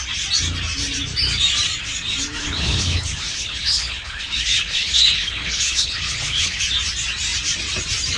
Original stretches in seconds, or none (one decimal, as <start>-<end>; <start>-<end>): 0.0-2.4; 6.6-8.2